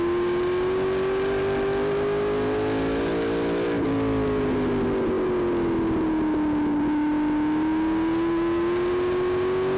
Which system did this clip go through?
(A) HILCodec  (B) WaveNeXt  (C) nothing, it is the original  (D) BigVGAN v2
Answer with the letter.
C